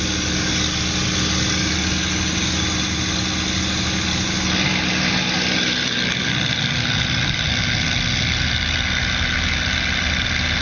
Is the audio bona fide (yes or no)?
yes